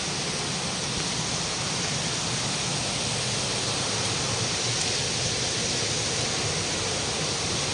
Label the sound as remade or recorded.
recorded